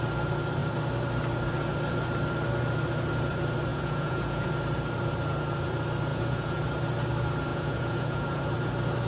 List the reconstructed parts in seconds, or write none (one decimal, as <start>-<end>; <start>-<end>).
3.7-4.5; 6.1-6.6; 7.5-8.4

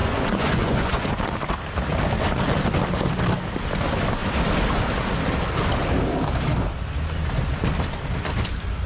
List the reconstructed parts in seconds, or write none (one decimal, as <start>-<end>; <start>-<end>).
0.0-1.2